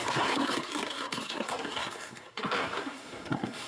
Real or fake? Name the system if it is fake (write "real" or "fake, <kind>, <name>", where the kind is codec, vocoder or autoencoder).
fake, codec, SNAC